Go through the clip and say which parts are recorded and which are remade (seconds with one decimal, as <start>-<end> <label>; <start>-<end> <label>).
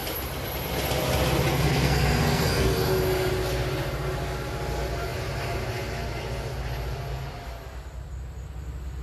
0.0-1.5 recorded; 1.5-3.3 remade; 3.3-9.0 recorded